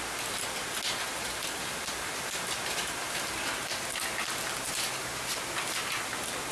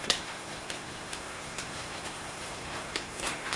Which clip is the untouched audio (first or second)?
first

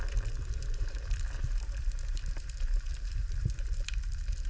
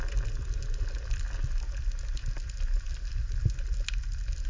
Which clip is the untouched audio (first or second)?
second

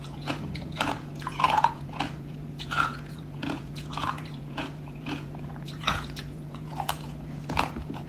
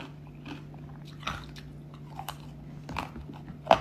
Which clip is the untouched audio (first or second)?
second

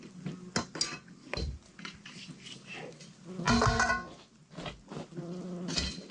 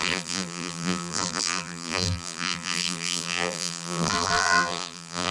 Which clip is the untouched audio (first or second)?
first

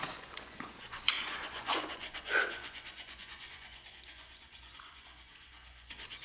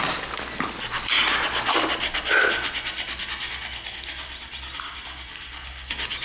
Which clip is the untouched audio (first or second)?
second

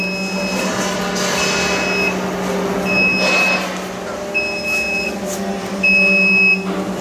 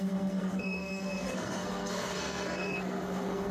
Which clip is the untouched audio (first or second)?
first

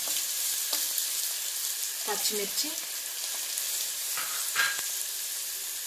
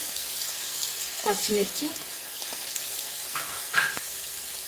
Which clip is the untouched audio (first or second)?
first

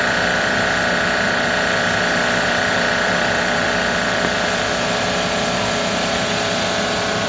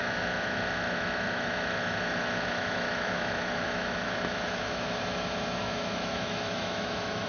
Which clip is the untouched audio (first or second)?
first